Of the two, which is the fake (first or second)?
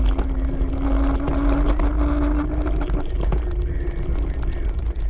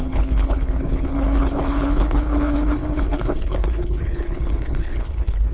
second